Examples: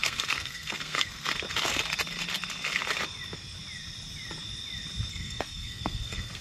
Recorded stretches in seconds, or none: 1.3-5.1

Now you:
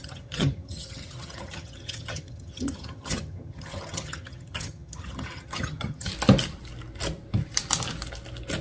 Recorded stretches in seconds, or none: 6.1-8.6

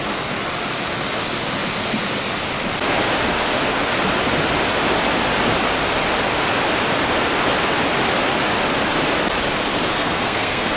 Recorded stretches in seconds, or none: 0.0-9.9

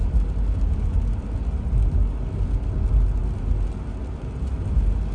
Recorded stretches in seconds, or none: 0.0-5.1

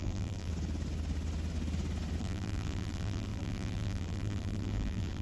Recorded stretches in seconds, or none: 0.5-2.2